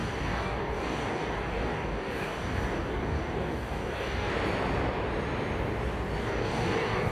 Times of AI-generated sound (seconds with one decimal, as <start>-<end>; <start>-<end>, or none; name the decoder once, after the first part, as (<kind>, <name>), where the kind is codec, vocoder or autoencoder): 0.0-4.3 (codec, DAC); 6.2-7.1